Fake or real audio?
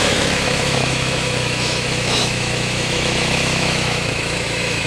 fake